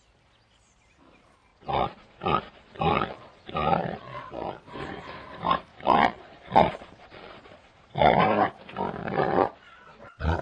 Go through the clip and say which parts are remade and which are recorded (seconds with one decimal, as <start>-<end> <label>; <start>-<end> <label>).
0.0-1.5 recorded; 1.5-4.6 remade; 4.6-5.7 recorded; 5.7-8.2 remade; 8.2-9.0 recorded; 9.0-10.4 remade